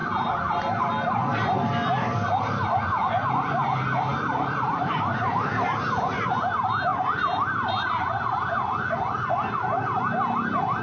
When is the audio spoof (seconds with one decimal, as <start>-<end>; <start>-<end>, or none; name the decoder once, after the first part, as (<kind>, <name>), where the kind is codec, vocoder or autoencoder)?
0.0-0.9 (vocoder, BigVGAN v2); 4.1-5.4